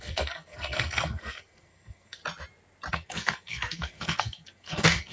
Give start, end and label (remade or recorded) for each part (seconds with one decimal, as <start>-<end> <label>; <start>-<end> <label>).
0.0-2.2 remade; 2.2-2.9 recorded; 2.9-5.1 remade